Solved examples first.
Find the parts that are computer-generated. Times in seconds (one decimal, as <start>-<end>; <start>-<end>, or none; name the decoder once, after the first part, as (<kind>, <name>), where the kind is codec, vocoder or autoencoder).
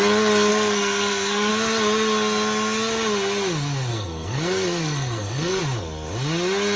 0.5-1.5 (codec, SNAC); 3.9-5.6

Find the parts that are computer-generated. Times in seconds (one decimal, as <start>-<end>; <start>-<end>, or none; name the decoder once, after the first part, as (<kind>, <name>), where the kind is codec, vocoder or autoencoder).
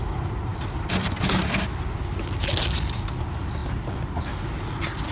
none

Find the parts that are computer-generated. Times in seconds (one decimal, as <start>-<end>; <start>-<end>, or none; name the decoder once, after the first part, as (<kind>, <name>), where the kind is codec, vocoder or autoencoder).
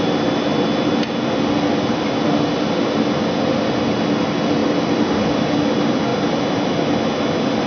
4.6-5.3 (vocoder, BigVGAN v2)